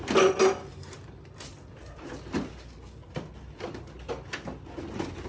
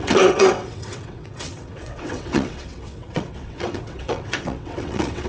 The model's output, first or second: second